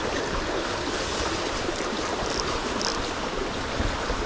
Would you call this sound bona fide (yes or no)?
yes